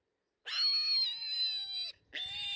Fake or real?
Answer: real